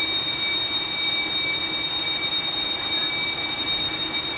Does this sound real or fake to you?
real